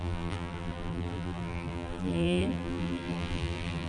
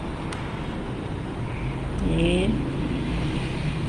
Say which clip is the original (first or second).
second